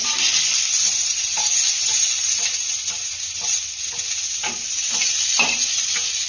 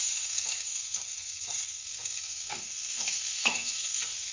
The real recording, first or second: first